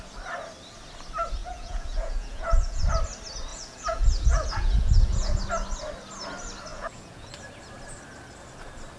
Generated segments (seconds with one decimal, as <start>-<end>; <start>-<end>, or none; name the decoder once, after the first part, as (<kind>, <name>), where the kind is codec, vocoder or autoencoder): 1.4-2.8 (vocoder, Vocos); 3.5-5.4; 6.7-7.3